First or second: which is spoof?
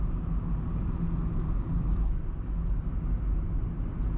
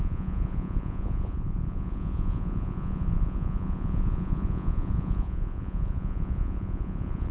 second